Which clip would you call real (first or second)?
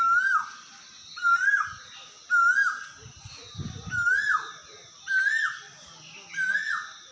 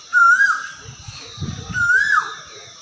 first